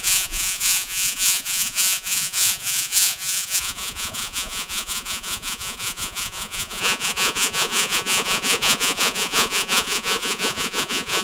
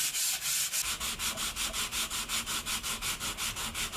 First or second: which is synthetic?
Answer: first